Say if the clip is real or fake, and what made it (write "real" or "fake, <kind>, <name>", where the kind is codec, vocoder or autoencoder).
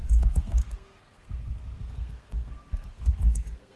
fake, codec, SNAC